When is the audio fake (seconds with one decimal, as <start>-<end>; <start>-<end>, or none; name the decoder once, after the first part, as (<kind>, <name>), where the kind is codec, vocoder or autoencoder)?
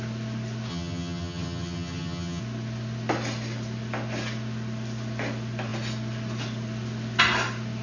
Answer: 0.7-2.4 (vocoder, HiFi-GAN)